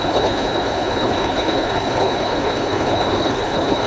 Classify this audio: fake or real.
fake